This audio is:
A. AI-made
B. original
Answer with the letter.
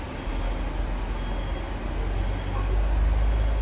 B